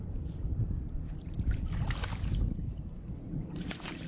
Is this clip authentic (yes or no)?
no